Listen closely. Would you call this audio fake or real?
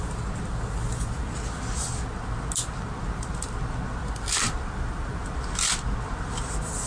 real